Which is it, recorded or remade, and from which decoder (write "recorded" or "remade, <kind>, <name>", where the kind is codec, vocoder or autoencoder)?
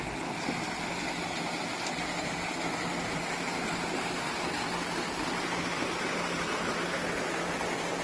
recorded